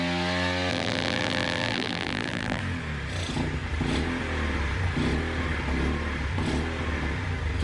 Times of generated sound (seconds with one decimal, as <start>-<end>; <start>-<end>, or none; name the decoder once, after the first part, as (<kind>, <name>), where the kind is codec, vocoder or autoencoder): 0.7-2.6 (vocoder, BigVGAN v2)